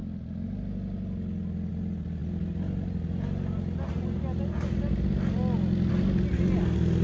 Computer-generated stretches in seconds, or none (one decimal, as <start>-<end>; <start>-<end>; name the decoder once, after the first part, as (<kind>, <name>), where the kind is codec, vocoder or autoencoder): none